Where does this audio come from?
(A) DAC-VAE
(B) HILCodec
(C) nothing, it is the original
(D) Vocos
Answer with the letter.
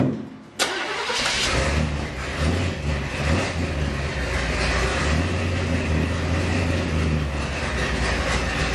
C